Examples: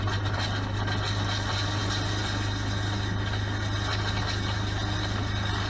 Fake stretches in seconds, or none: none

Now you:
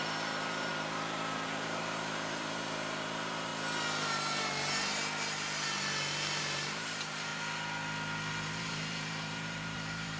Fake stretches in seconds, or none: 0.0-3.5 (vocoder, BigVGAN v2); 6.4-7.3; 8.3-10.2

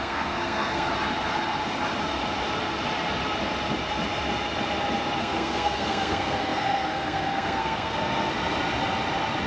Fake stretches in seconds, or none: 0.0-0.9 (codec, SNAC); 5.2-8.3